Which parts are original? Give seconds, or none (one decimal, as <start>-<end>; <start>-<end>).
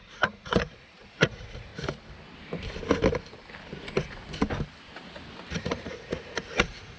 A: 1.7-5.5